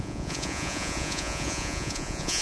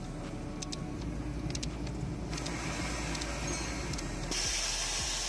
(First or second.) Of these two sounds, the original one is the second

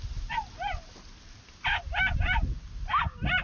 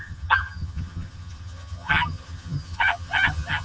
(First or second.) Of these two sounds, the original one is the first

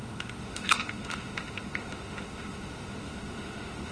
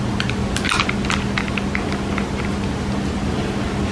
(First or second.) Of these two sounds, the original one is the second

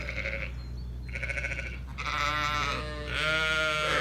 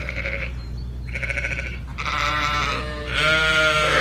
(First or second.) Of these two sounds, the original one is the first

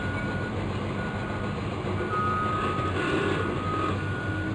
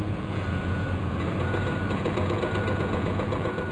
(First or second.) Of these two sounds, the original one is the first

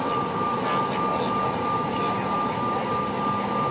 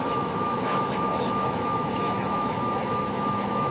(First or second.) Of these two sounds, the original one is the first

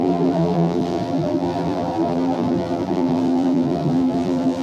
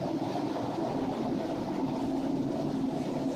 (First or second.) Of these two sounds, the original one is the second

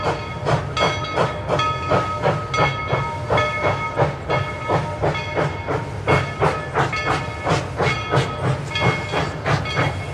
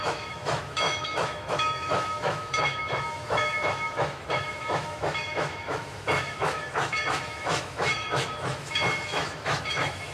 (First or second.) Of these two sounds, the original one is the first